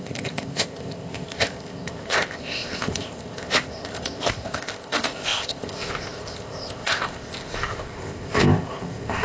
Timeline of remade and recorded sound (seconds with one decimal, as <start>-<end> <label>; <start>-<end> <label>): 0.0-9.2 remade